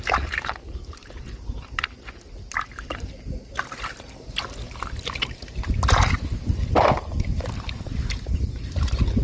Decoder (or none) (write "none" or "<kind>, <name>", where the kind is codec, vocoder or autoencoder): none